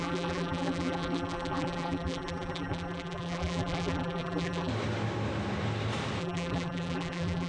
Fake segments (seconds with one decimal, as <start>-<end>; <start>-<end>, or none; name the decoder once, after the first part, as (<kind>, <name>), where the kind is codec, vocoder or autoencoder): 0.0-4.7 (vocoder, BigVGAN v2); 6.2-7.5